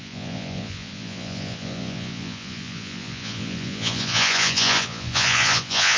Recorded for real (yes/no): no